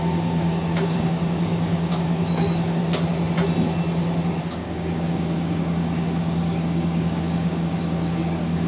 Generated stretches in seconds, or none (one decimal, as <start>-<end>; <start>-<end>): 0.0-2.8; 4.4-8.7

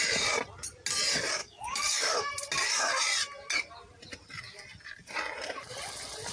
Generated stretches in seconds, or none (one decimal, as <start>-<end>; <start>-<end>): 1.4-2.3